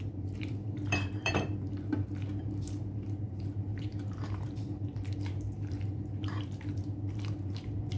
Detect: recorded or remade remade